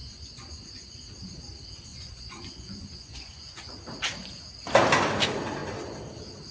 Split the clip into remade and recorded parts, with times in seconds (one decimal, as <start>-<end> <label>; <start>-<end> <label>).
0.0-1.0 remade; 1.0-1.9 recorded; 1.9-3.8 remade; 3.8-6.5 recorded